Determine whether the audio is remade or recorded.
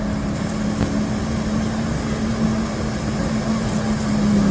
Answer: recorded